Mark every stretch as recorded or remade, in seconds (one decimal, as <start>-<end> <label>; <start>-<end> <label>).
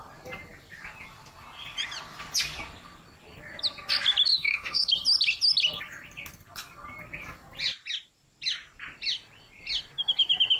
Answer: 0.0-4.3 recorded; 4.3-4.9 remade; 4.9-10.6 recorded